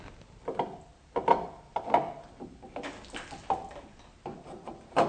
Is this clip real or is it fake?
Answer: real